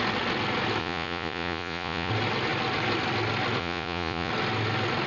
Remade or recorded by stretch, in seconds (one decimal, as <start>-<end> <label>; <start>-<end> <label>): 0.0-0.8 recorded; 0.8-2.1 remade; 2.1-3.6 recorded; 3.6-4.3 remade; 4.3-5.1 recorded